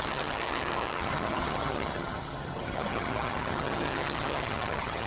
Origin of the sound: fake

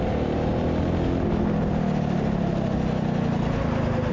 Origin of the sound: real